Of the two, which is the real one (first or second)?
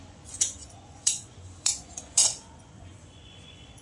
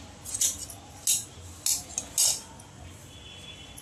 second